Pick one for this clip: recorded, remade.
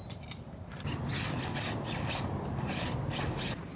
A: remade